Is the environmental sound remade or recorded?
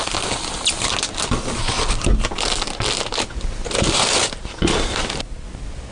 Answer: recorded